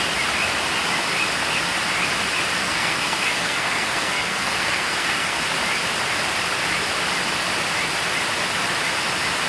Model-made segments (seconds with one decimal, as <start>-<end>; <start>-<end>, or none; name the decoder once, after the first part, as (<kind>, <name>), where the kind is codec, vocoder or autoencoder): 2.6-5.4 (codec, SNAC)